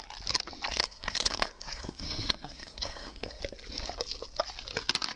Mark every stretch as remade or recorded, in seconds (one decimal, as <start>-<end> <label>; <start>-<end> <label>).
0.0-0.7 recorded; 0.7-3.4 remade; 3.4-5.2 recorded